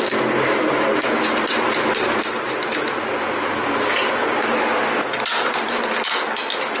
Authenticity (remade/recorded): recorded